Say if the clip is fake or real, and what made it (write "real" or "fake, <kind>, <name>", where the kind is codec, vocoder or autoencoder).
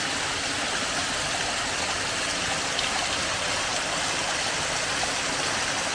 real